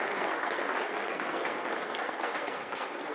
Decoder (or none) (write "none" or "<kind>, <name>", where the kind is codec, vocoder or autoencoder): codec, SNAC